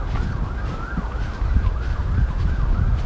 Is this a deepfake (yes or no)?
no